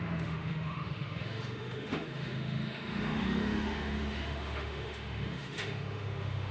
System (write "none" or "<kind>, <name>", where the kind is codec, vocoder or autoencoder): autoencoder, DAC-VAE